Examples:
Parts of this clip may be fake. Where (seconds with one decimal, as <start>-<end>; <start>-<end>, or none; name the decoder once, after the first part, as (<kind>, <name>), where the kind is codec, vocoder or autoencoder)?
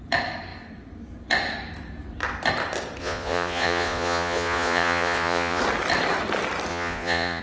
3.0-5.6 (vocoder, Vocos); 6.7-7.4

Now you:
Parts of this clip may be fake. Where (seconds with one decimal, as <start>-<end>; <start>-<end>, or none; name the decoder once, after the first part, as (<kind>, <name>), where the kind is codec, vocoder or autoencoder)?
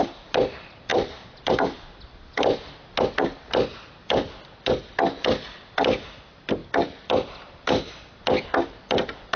0.9-2.8 (vocoder, BigVGAN v2); 6.6-8.1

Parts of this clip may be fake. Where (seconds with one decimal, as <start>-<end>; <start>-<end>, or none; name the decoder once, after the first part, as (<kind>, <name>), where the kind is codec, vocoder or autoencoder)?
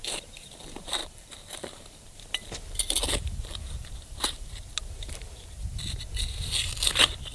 1.0-2.2 (vocoder, BigVGAN v2); 3.0-4.5